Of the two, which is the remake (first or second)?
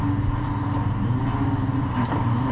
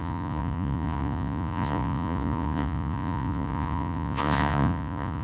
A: second